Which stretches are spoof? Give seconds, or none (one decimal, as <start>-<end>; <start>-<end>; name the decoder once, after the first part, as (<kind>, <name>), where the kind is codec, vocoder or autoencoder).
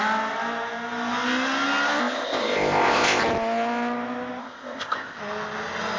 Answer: 2.0-3.2 (codec, ZipCodec); 4.4-5.2